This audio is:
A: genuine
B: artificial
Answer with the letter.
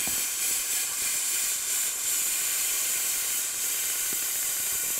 B